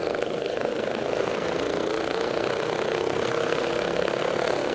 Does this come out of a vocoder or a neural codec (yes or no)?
yes